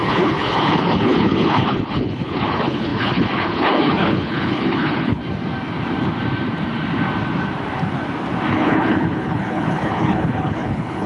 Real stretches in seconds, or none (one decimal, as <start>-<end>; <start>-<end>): 5.2-8.5